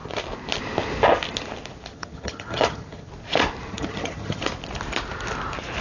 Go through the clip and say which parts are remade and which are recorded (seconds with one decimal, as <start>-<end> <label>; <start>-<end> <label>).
0.0-1.9 recorded; 1.9-3.1 remade; 3.1-3.7 recorded; 3.7-4.4 remade; 4.4-5.8 recorded

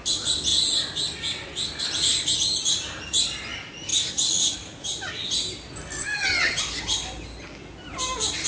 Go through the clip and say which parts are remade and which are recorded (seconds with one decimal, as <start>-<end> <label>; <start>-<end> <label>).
0.0-6.0 recorded; 6.0-6.6 remade; 6.6-8.5 recorded

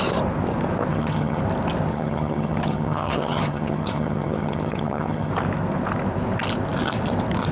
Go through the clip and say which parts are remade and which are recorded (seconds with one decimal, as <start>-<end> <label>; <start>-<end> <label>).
0.0-0.9 recorded; 0.9-1.4 remade; 1.4-1.9 recorded; 1.9-5.3 remade; 5.3-7.5 recorded

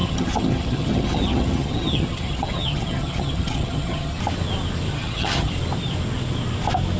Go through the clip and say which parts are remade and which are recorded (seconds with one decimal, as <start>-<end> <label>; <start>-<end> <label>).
0.0-4.2 remade; 4.2-4.9 recorded; 4.9-5.5 remade; 5.5-7.0 recorded